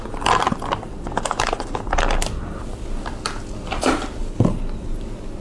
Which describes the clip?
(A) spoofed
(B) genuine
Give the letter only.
B